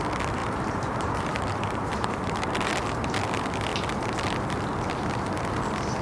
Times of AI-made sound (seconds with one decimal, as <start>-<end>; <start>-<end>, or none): 0.4-2.7